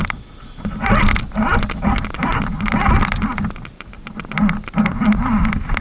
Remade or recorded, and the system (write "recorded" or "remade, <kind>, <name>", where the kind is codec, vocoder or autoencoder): recorded